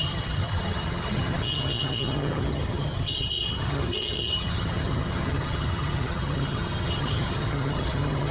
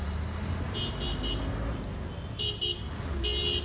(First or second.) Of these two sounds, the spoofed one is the first